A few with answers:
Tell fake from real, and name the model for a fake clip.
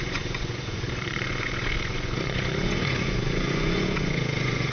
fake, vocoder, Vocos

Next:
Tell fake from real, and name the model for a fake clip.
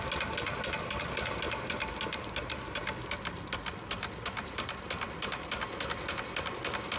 real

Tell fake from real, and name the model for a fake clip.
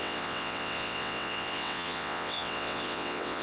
fake, vocoder, WaveNeXt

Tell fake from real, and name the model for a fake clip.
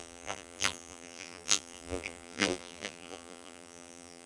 fake, vocoder, BigVGAN v2